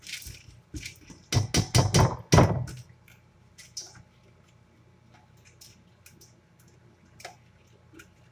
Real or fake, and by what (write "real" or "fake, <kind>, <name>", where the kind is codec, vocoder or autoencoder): real